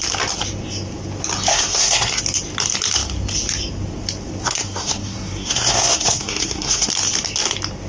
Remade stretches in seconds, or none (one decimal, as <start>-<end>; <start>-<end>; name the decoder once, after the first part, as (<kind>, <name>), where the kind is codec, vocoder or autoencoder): 1.5-2.2 (codec, SNAC); 4.4-6.9